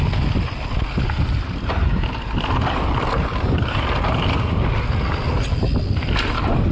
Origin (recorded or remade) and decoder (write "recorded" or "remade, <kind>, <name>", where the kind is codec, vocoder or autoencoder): recorded